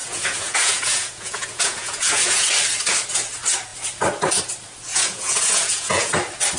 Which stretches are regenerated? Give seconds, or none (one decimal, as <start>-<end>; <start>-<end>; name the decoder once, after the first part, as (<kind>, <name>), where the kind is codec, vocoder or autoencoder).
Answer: 0.0-2.5 (vocoder, Vocos); 4.9-6.1